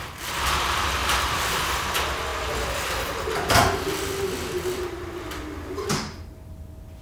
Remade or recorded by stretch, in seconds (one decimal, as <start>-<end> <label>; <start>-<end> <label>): 0.0-7.0 recorded